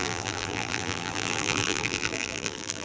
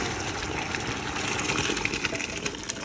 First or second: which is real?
second